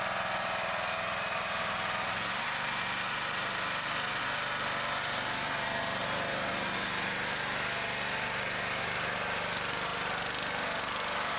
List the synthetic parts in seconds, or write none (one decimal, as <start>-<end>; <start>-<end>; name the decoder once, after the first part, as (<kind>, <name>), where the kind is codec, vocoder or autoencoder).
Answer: none